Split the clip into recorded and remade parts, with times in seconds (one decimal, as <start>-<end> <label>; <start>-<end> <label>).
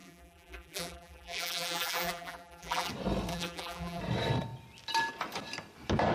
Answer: 0.0-2.9 remade; 2.9-3.3 recorded; 3.3-4.0 remade; 4.0-6.1 recorded